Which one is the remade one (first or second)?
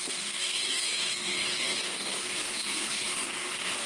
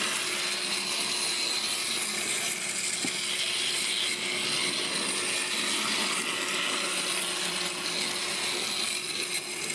first